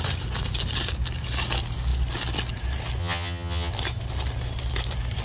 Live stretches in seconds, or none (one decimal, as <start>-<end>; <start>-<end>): 0.0-3.0; 3.7-5.2